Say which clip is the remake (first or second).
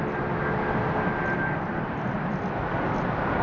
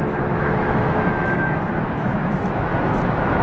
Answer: second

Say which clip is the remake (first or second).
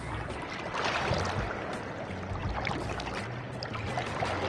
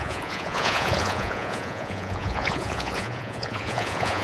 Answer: second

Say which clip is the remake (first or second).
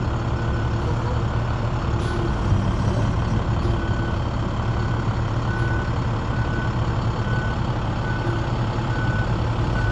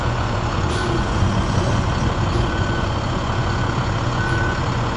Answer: second